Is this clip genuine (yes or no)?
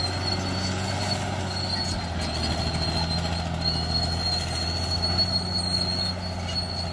yes